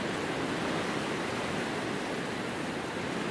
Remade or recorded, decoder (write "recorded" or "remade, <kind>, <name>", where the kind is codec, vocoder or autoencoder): recorded